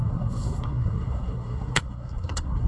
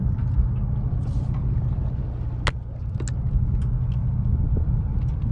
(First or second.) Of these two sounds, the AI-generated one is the first